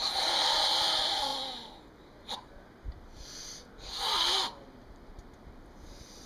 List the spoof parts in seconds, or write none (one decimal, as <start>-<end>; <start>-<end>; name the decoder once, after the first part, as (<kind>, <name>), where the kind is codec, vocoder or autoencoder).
none